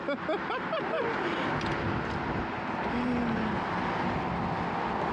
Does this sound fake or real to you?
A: real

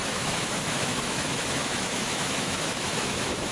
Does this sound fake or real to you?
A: fake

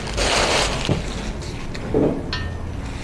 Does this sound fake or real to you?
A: real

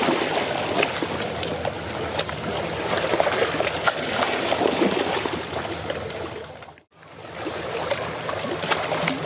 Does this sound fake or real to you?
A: real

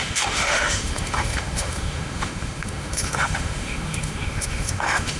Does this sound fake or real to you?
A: fake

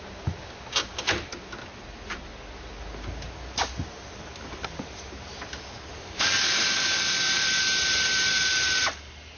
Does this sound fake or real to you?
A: real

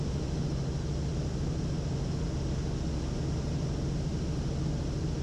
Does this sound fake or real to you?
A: real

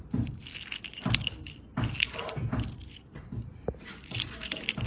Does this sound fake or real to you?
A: real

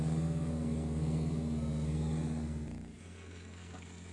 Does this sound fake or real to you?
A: fake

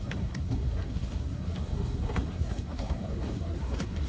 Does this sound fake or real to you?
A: fake